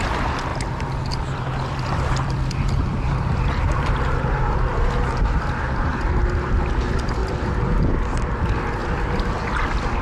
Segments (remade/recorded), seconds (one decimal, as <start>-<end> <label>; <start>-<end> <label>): 0.0-0.5 recorded; 0.5-4.2 remade; 4.2-7.2 recorded; 7.2-7.9 remade; 7.9-8.8 recorded; 8.8-10.0 remade